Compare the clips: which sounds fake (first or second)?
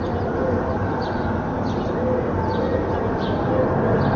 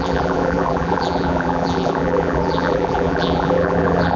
second